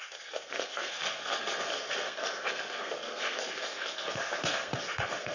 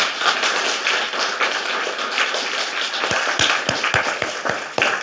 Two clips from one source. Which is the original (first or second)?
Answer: second